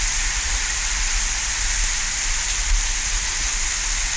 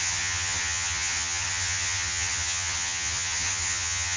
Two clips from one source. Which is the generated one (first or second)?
second